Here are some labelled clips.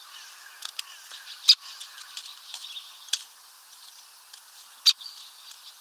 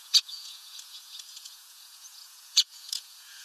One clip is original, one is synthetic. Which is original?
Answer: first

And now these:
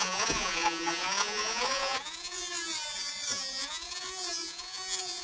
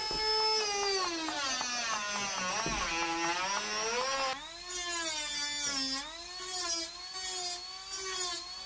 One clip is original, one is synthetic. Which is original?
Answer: second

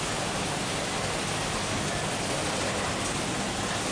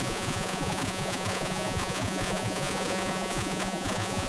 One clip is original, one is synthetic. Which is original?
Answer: first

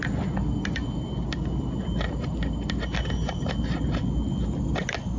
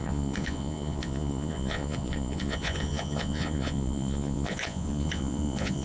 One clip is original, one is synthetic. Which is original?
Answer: first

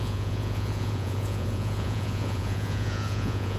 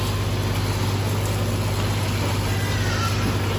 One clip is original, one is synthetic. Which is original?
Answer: second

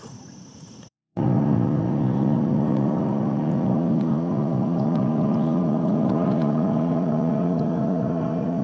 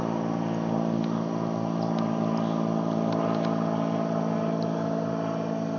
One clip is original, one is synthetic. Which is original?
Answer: second